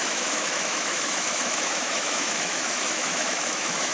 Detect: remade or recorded remade